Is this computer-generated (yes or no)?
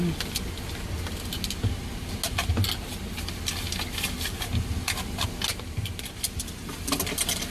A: no